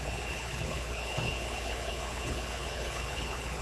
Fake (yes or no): yes